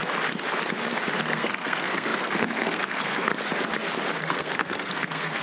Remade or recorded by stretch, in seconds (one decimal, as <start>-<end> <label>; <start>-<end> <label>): 0.0-1.2 recorded; 1.2-3.3 remade; 3.3-4.2 recorded; 4.2-5.4 remade